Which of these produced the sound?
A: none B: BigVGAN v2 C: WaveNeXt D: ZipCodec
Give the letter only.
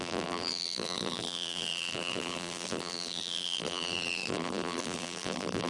B